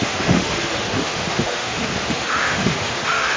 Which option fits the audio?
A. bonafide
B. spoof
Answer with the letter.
B